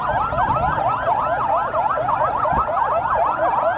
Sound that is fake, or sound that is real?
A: real